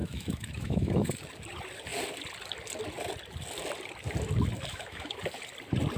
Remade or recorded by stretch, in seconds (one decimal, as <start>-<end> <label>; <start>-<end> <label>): 0.0-1.1 remade; 1.1-4.7 recorded; 4.7-5.2 remade; 5.2-6.0 recorded